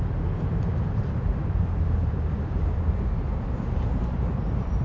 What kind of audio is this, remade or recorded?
remade